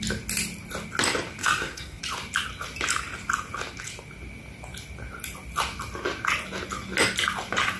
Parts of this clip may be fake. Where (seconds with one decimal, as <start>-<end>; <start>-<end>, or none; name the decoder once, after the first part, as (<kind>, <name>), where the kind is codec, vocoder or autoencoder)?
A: 1.4-2.0 (codec, SNAC)